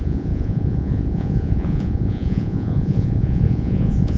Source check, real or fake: fake